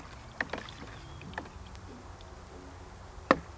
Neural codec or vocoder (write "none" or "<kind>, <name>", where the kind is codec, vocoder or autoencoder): none